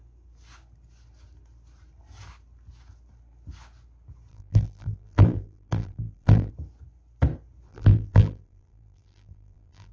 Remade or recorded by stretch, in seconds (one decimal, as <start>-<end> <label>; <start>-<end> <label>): 0.0-4.3 recorded; 4.3-6.5 remade; 6.5-7.7 recorded; 7.7-9.9 remade